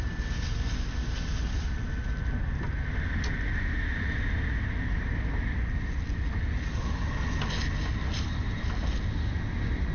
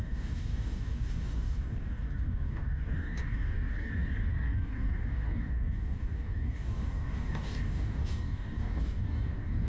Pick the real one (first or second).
first